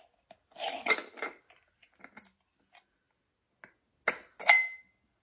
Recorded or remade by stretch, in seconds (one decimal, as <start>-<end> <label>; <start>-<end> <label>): 0.0-5.2 recorded